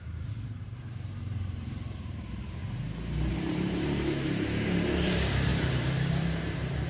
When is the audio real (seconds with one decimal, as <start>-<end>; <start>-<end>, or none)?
2.6-3.3